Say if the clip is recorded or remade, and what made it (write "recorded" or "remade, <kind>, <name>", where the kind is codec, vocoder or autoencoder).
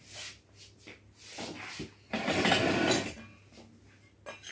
recorded